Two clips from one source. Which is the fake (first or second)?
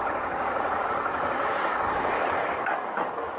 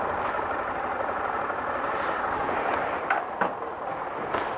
first